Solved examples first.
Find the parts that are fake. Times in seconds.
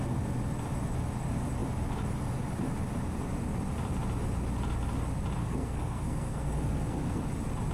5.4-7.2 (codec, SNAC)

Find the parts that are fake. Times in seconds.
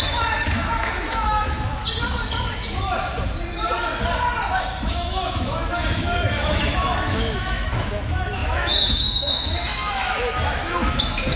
0.0-1.8 (autoencoder, DAC-VAE); 4.8-11.4